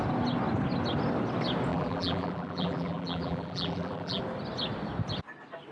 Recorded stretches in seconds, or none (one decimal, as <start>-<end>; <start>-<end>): 0.0-1.7; 4.2-5.7